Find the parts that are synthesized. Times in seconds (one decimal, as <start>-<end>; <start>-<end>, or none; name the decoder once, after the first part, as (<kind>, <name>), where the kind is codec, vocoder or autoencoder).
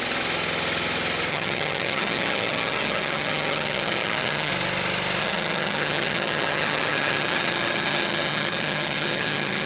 1.3-4.5 (vocoder, HiFi-GAN); 5.2-9.7